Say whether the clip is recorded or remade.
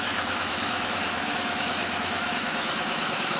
remade